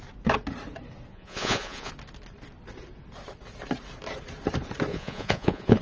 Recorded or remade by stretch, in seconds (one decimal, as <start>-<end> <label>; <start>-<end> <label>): 0.0-1.1 recorded; 1.1-1.9 remade; 1.9-4.9 recorded; 4.9-5.8 remade